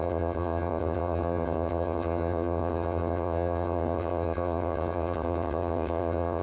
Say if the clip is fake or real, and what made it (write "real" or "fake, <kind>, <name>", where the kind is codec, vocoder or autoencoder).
fake, vocoder, HiFi-GAN